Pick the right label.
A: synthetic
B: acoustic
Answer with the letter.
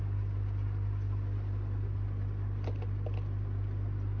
B